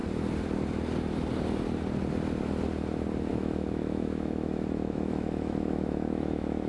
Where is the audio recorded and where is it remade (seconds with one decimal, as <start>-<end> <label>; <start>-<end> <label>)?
0.0-3.3 recorded; 3.3-6.7 remade

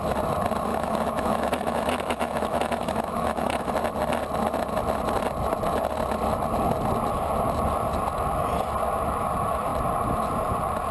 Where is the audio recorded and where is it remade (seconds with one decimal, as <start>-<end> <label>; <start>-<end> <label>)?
0.0-0.7 recorded; 0.7-3.7 remade; 3.7-10.9 recorded

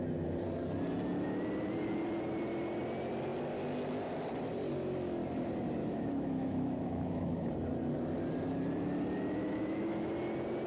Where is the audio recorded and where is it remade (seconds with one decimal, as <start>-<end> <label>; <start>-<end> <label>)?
0.0-5.8 recorded; 5.8-7.5 remade; 7.5-9.4 recorded; 9.4-10.1 remade; 10.1-10.7 recorded

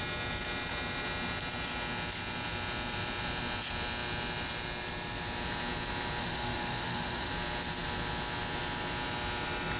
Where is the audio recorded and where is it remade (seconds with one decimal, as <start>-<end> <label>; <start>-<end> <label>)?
0.0-6.2 recorded; 6.2-7.3 remade; 7.3-9.8 recorded